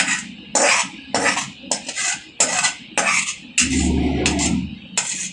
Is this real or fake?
real